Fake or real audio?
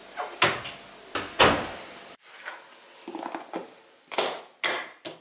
real